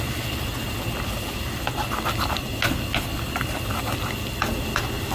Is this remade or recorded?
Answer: recorded